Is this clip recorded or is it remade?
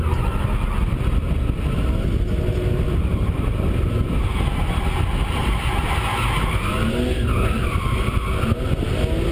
recorded